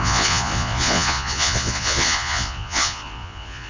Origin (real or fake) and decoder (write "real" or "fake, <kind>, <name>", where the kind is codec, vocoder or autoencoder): fake, vocoder, Vocos